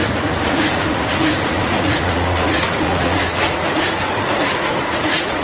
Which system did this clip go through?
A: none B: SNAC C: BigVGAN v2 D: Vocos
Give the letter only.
D